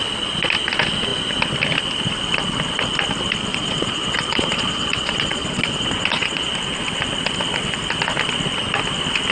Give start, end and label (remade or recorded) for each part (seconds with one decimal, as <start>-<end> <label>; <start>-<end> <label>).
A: 0.0-3.5 recorded; 3.5-6.6 remade; 6.6-9.3 recorded